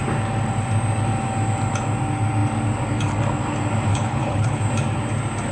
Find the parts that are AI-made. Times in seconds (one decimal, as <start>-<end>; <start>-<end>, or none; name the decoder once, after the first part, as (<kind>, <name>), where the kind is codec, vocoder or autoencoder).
3.9-4.6 (codec, HILCodec)